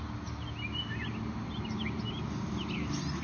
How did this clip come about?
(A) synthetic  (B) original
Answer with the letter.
B